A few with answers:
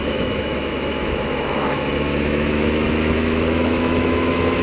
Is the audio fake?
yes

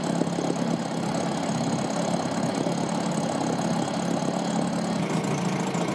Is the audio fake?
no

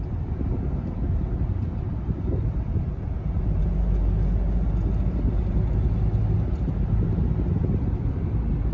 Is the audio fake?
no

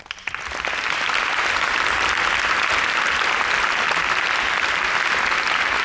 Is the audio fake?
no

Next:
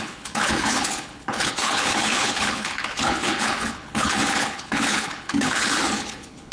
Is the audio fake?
yes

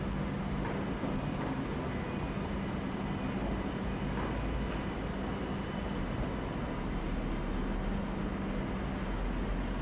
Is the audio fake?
no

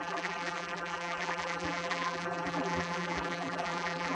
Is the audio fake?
yes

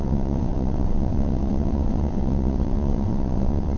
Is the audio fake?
yes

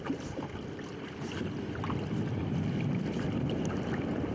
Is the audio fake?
no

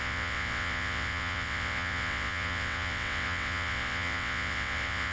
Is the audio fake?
yes